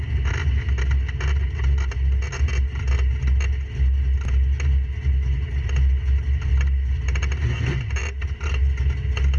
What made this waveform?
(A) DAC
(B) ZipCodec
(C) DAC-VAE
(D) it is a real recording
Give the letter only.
D